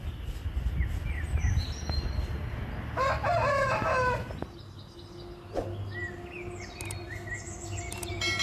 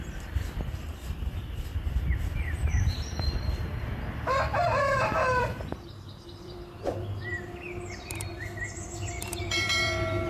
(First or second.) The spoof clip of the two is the second